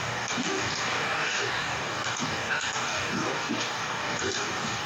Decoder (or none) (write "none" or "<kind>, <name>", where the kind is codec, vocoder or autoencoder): codec, DAC